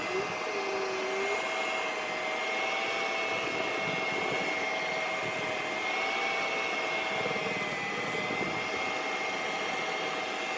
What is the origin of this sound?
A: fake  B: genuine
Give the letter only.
B